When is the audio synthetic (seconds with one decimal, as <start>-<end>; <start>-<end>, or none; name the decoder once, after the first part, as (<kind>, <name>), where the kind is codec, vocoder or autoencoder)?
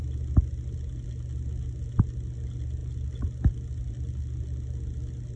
none